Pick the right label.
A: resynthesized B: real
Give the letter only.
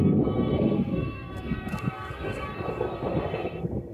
A